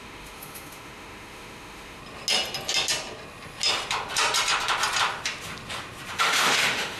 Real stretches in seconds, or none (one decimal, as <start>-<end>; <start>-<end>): 2.0-6.2